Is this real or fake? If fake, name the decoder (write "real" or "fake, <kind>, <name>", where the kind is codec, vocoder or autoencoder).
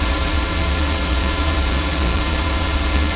fake, vocoder, Vocos